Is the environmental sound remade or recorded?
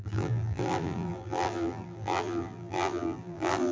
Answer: remade